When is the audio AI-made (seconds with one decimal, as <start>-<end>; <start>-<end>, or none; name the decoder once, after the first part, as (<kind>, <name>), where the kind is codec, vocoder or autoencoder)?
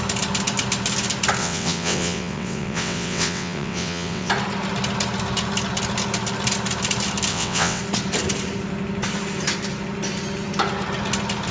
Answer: 1.4-4.3 (vocoder, WaveNeXt); 7.3-7.8